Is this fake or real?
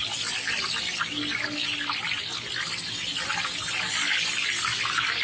real